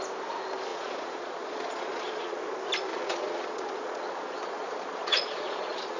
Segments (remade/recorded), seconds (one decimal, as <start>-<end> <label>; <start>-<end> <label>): 0.0-0.7 recorded; 0.7-2.4 remade; 2.4-2.9 recorded; 2.9-6.0 remade